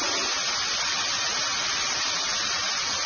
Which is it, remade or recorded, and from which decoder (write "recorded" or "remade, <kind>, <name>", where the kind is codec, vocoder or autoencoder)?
remade, vocoder, BigVGAN v2